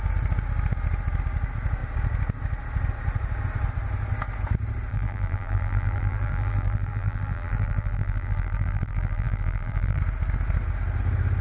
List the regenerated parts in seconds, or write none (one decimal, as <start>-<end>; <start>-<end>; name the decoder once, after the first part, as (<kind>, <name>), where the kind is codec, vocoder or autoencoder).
4.9-10.0 (vocoder, BigVGAN v2)